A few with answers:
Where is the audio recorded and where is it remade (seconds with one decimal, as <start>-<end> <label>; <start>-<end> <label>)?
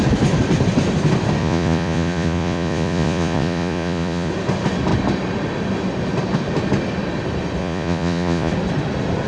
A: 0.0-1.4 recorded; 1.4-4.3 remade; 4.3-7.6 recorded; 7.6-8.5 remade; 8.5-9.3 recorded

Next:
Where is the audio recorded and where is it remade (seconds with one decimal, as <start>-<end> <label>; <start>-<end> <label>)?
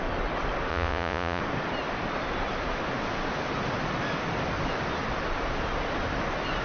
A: 0.0-0.7 recorded; 0.7-1.4 remade; 1.4-6.6 recorded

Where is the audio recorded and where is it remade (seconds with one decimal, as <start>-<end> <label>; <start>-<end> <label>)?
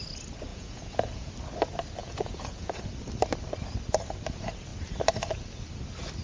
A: 0.0-0.5 recorded; 0.5-1.3 remade; 1.3-2.0 recorded; 2.0-2.8 remade; 2.8-6.2 recorded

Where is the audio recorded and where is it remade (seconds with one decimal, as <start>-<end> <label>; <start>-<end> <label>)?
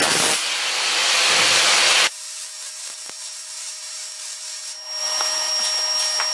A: 0.0-5.0 recorded; 5.0-5.5 remade; 5.5-6.3 recorded